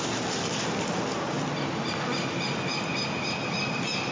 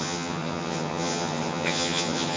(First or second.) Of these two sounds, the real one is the first